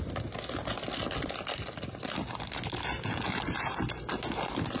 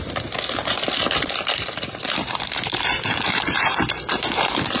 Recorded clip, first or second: first